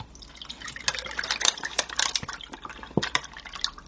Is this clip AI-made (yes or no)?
no